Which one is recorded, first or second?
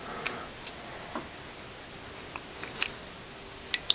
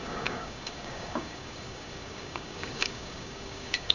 first